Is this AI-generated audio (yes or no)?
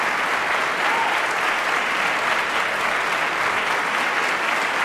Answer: no